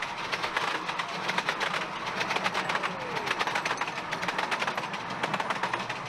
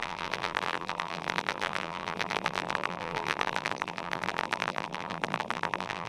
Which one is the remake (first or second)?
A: second